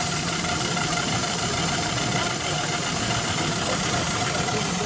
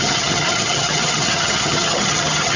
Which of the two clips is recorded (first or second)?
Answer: first